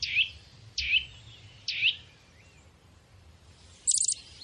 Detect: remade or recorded recorded